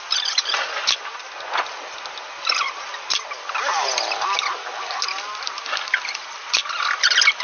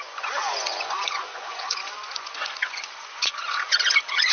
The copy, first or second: second